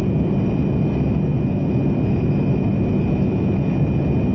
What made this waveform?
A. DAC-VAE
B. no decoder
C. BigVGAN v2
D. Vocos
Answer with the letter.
B